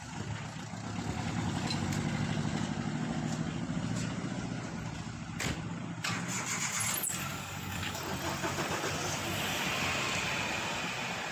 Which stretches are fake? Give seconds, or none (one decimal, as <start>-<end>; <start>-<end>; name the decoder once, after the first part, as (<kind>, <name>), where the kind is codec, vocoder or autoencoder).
7.3-8.0 (codec, DAC)